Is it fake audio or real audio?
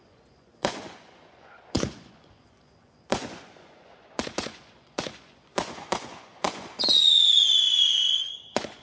fake